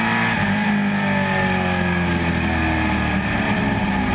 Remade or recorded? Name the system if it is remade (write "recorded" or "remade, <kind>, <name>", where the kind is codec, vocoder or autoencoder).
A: recorded